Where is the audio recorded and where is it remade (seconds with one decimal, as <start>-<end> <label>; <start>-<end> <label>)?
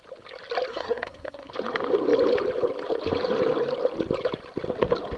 0.0-0.7 recorded; 0.7-1.5 remade; 1.5-5.2 recorded